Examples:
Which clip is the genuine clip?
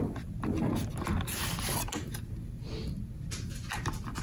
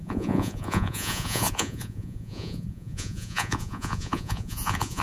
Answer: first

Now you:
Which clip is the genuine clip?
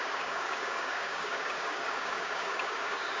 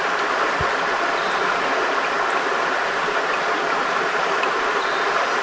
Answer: second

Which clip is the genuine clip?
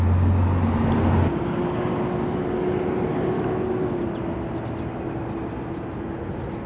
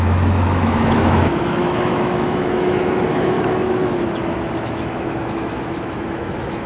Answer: first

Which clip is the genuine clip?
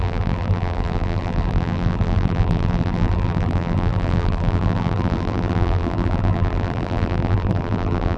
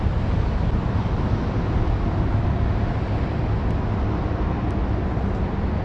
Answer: second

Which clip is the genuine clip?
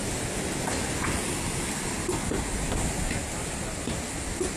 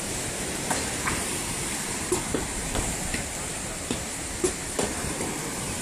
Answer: first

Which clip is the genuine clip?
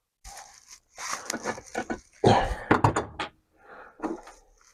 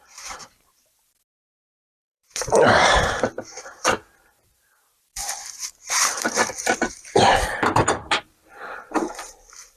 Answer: first